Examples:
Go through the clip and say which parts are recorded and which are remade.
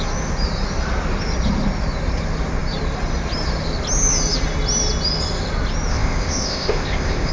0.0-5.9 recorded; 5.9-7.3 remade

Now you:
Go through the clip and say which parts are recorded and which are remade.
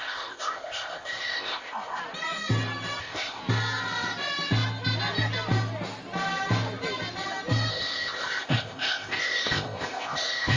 0.0-2.0 remade; 2.0-3.0 recorded; 3.0-3.4 remade; 3.4-7.7 recorded; 7.7-10.6 remade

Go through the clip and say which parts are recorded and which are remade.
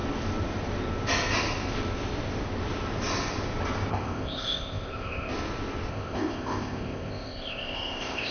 0.0-3.9 recorded; 3.9-5.3 remade; 5.3-5.9 recorded; 5.9-8.3 remade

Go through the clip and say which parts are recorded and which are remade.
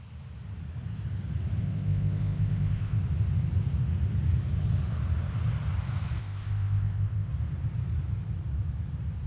0.0-1.6 recorded; 1.6-3.0 remade; 3.0-6.2 recorded; 6.2-7.3 remade; 7.3-9.3 recorded